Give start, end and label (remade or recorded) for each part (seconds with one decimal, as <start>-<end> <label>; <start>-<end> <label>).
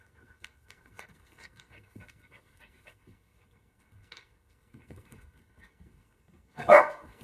0.0-7.2 remade